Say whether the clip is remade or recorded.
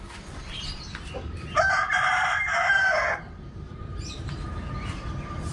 remade